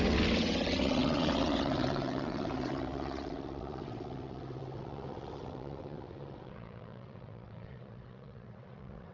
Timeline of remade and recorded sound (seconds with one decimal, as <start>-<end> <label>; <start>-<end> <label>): 0.0-9.1 remade